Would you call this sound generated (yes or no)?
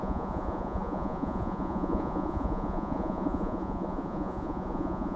yes